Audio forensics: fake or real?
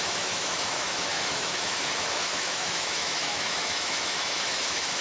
fake